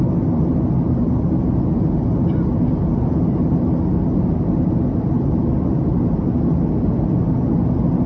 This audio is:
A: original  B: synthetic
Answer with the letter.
A